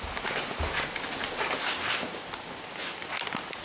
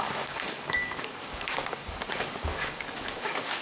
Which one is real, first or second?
first